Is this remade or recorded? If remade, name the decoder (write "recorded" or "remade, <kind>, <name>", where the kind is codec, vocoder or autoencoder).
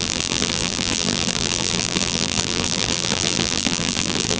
remade, vocoder, BigVGAN v2